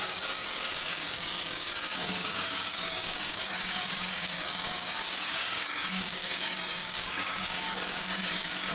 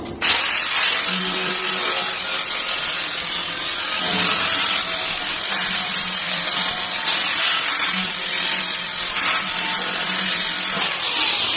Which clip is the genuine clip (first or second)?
second